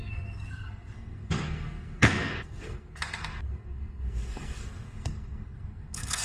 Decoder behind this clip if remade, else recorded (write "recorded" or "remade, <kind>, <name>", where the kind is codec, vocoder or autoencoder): remade, codec, SNAC